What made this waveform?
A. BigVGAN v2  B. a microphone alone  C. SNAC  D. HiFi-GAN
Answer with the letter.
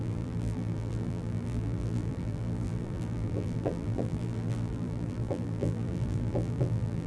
A